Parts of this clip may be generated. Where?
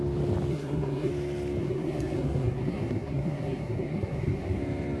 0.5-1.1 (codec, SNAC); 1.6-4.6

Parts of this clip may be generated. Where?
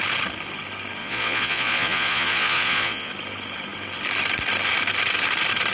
1.0-3.1 (vocoder, Vocos)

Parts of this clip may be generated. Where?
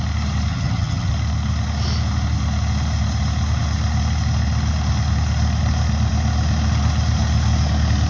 0.5-1.1 (vocoder, HiFi-GAN)